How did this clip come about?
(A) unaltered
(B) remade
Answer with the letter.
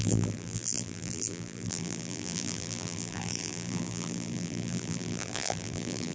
B